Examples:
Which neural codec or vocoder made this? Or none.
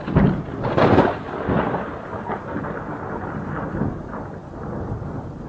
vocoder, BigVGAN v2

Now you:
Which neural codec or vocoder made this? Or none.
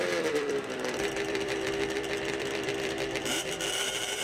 vocoder, BigVGAN v2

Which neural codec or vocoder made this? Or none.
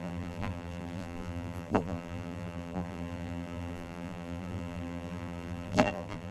vocoder, BigVGAN v2